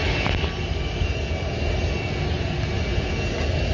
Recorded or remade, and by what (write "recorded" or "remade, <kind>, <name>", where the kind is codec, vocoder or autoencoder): recorded